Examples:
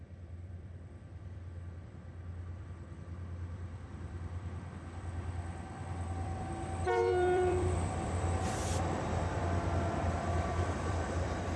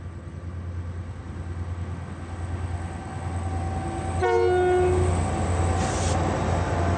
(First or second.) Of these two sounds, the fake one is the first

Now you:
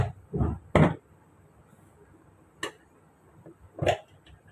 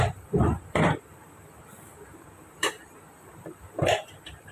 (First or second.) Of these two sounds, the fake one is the second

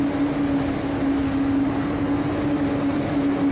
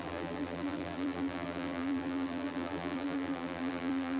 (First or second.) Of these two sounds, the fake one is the second